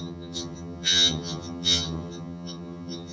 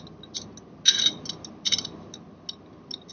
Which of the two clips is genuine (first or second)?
second